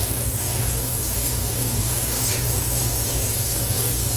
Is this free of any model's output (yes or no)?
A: no